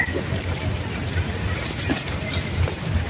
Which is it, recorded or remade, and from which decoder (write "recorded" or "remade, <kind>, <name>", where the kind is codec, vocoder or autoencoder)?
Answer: recorded